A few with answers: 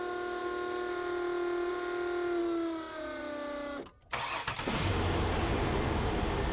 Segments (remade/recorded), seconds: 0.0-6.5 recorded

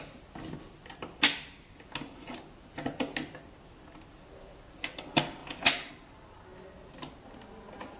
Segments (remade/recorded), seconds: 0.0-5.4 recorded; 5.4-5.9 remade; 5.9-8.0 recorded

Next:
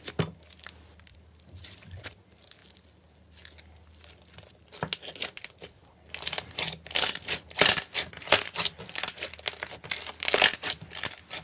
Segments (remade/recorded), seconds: 0.0-1.6 recorded; 1.6-2.2 remade; 2.2-11.4 recorded